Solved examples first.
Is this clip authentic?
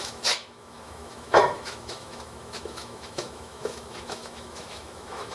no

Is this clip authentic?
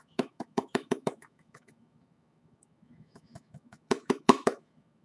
no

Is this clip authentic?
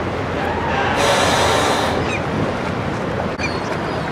yes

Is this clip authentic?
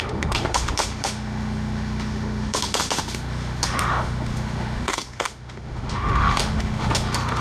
no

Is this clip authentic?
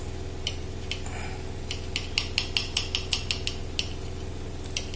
yes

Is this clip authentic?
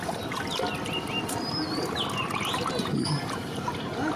yes